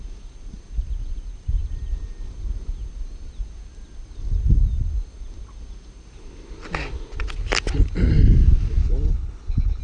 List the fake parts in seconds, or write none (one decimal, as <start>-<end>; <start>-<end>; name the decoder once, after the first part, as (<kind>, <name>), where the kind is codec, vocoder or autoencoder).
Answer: 8.8-9.8 (codec, HILCodec)